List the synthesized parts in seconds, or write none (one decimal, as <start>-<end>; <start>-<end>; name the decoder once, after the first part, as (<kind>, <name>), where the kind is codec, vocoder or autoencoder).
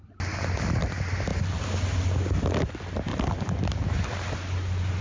none